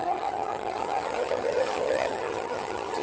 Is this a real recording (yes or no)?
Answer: no